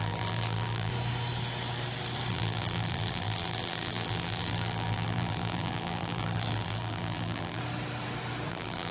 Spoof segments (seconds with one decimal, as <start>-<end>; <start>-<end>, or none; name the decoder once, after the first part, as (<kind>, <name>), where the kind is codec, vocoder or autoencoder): 0.0-0.9 (vocoder, BigVGAN v2); 2.3-7.6; 8.5-8.9